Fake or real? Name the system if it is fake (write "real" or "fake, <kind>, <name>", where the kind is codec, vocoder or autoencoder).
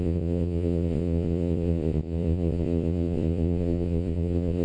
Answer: fake, vocoder, Vocos